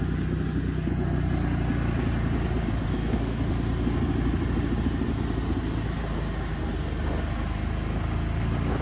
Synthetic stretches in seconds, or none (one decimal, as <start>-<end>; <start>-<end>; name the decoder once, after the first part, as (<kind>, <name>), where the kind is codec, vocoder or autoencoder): 2.9-3.5 (codec, SNAC)